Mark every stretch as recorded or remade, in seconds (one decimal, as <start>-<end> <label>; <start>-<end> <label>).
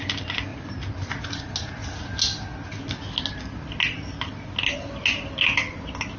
0.0-6.2 recorded